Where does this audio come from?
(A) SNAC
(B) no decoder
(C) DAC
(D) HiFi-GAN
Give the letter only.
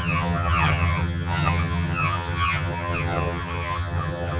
D